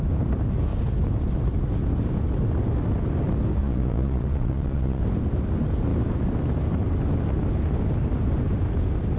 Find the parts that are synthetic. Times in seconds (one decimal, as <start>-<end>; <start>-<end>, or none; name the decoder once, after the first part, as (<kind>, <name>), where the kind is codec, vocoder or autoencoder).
3.6-5.0 (vocoder, Vocos)